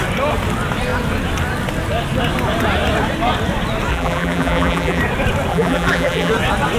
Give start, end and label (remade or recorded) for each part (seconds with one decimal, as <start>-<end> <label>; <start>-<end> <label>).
0.0-3.9 recorded; 3.9-5.0 remade; 5.0-5.5 recorded; 5.5-6.3 remade; 6.3-6.8 recorded